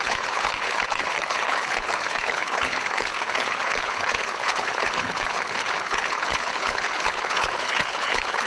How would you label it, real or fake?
fake